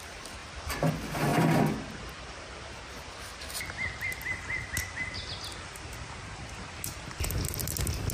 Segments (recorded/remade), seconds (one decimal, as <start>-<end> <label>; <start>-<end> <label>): 0.0-8.1 recorded